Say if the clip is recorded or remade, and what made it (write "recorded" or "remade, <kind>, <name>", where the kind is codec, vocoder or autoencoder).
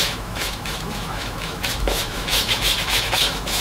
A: remade, autoencoder, DAC-VAE